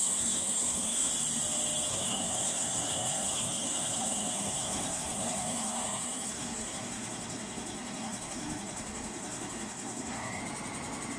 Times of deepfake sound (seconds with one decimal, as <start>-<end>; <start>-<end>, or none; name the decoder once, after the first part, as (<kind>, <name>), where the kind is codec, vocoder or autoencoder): 0.0-1.1 (codec, SNAC); 1.9-10.4